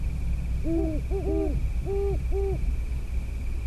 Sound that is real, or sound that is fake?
real